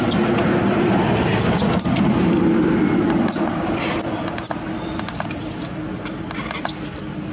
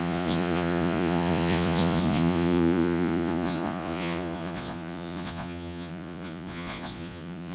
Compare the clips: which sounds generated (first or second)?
second